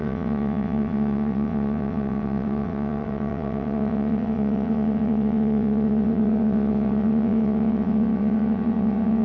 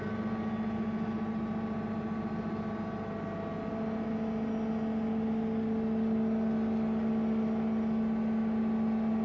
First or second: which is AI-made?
first